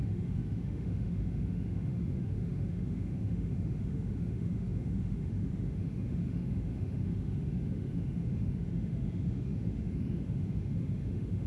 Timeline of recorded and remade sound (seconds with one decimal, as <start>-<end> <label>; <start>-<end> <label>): 0.0-11.5 remade

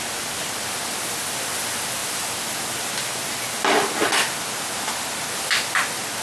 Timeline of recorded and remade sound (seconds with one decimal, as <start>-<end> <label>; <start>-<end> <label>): 0.0-6.2 recorded